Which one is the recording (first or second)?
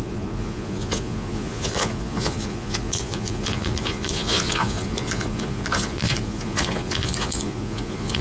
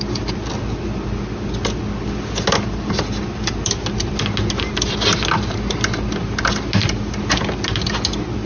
second